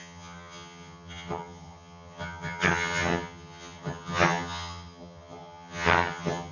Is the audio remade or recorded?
remade